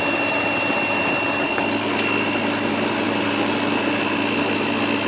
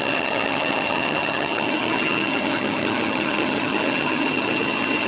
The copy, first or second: second